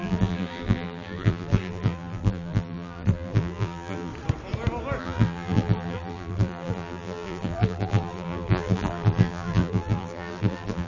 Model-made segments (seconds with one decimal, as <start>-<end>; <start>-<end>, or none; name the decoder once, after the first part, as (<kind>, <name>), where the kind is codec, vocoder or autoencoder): 0.0-4.1 (vocoder, BigVGAN v2); 5.0-10.9